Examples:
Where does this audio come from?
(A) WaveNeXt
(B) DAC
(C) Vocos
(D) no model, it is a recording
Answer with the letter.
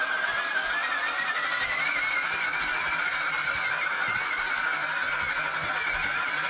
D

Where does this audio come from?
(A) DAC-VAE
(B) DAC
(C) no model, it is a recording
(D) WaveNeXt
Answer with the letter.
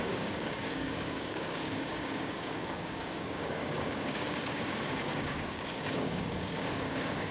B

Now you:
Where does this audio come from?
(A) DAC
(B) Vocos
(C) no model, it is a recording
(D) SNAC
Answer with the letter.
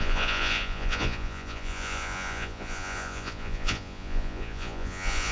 B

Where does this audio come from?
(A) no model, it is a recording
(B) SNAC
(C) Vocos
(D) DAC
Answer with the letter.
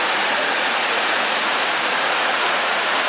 C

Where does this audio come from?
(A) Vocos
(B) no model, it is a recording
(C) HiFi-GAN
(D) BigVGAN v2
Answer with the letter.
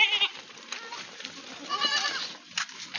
B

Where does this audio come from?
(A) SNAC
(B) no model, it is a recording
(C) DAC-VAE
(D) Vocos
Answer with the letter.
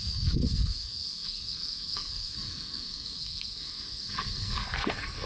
A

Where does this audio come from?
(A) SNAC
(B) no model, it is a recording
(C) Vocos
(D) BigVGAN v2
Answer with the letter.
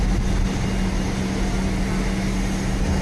B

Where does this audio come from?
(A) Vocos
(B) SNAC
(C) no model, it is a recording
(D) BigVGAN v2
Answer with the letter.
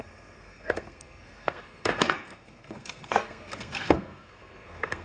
B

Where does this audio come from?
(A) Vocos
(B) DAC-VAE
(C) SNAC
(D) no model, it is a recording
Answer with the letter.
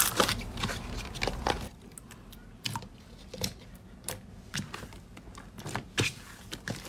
D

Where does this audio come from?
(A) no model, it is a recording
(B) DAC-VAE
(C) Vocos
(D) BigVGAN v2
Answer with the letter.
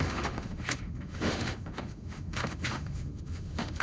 B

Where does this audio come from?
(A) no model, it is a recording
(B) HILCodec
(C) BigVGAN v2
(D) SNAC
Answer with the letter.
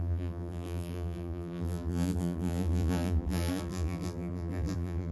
C